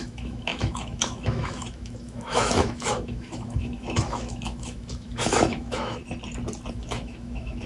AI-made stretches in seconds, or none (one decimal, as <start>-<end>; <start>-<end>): 0.0-6.0; 6.7-7.7